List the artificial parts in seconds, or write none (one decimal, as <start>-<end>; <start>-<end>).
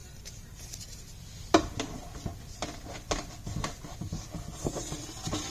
0.0-0.6